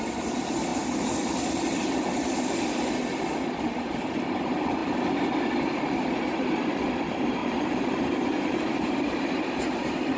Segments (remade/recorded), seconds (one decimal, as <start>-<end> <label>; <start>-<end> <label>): 0.0-7.4 recorded; 7.4-10.2 remade

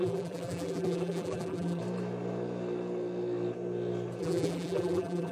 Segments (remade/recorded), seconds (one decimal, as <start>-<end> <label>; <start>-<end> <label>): 0.0-1.8 remade; 1.8-4.2 recorded; 4.2-5.3 remade

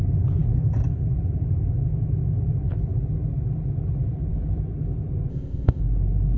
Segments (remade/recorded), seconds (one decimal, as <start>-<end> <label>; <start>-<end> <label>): 0.0-5.3 recorded; 5.3-5.8 remade; 5.8-6.4 recorded

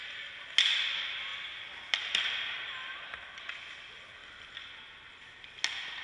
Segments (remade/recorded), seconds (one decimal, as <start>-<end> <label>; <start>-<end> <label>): 0.0-6.0 recorded

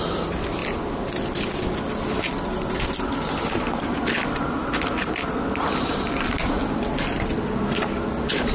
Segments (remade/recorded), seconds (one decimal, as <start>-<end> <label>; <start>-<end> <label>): 0.0-8.5 recorded

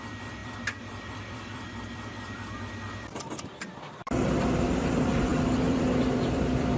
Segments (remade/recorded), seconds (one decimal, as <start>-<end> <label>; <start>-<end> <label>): 0.0-6.8 remade